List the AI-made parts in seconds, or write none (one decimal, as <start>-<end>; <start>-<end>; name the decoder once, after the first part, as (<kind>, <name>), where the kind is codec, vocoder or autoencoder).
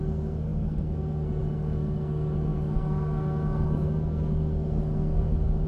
0.0-5.7 (codec, SNAC)